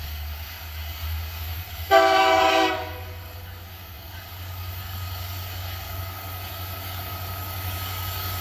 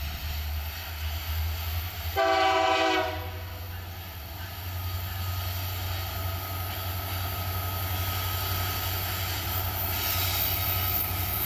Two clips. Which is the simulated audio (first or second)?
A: first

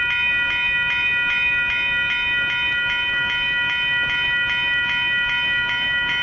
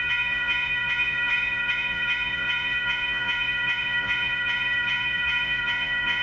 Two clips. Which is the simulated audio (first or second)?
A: second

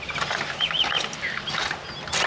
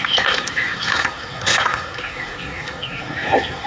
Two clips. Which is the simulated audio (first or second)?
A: second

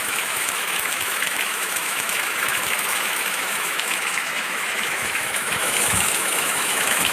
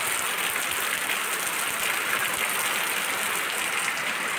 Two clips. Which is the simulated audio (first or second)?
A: first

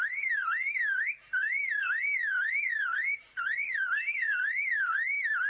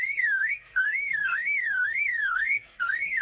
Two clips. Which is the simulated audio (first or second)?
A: second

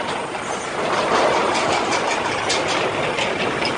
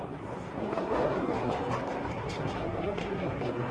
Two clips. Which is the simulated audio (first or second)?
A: second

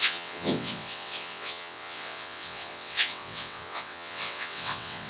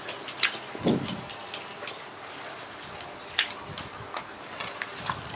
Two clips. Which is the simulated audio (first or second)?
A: first